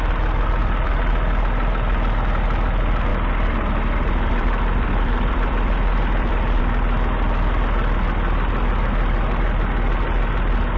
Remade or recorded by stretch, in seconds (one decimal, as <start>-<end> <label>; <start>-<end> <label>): 0.0-0.6 recorded; 0.6-1.1 remade; 1.1-3.1 recorded; 3.1-6.6 remade; 6.6-10.8 recorded

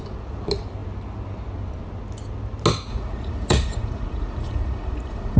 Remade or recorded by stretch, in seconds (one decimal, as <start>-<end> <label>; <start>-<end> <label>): 0.0-2.9 recorded; 2.9-5.4 remade

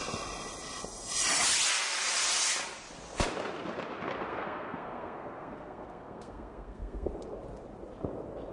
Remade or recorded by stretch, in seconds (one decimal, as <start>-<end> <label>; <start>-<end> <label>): 0.0-4.3 recorded; 4.3-7.1 remade; 7.1-8.5 recorded

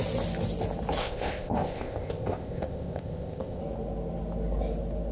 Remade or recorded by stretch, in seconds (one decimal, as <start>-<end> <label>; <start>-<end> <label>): 0.0-1.0 recorded; 1.0-3.6 remade; 3.6-5.1 recorded

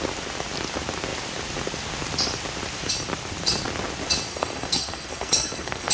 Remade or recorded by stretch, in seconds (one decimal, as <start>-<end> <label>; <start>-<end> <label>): 0.0-4.3 recorded; 4.3-5.9 remade

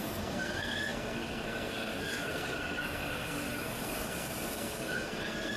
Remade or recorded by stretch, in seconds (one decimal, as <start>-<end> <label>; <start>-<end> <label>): 0.0-5.6 remade